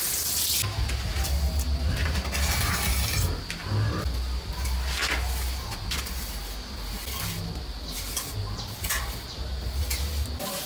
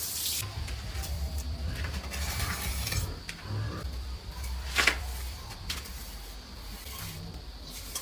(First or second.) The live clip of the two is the first